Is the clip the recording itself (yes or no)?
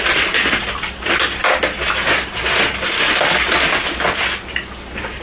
yes